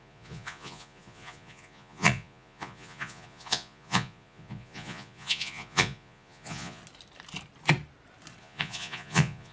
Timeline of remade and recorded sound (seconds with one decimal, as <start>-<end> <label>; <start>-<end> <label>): 0.0-6.8 remade; 6.8-8.4 recorded; 8.4-9.5 remade